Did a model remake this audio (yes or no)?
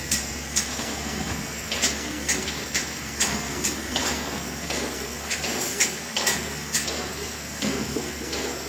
yes